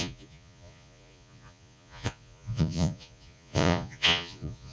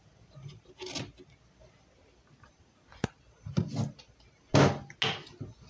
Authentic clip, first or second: second